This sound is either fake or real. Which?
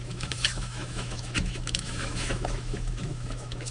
fake